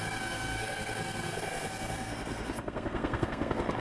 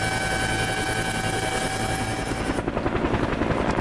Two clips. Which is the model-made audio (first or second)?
first